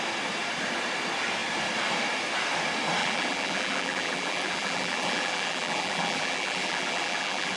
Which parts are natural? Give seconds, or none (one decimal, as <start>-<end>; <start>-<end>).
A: 0.0-3.0